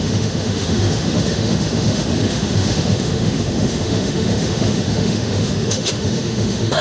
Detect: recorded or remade remade